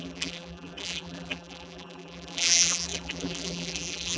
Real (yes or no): no